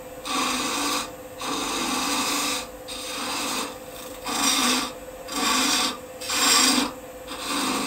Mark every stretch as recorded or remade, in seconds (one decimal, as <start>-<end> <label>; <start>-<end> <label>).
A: 0.0-4.6 recorded; 4.6-6.5 remade; 6.5-7.9 recorded